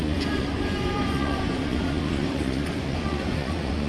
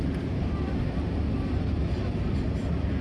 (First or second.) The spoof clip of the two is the first